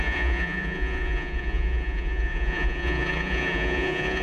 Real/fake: fake